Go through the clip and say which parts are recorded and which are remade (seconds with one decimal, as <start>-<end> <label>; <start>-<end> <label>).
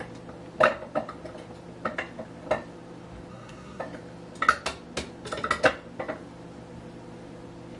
0.0-3.3 recorded; 3.3-3.8 remade; 3.8-7.8 recorded